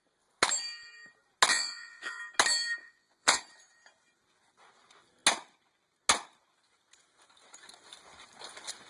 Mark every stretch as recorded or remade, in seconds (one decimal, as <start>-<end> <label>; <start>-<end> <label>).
0.0-1.5 recorded; 1.5-2.2 remade; 2.2-2.8 recorded; 2.8-3.4 remade; 3.4-8.9 recorded